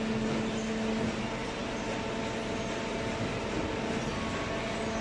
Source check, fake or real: real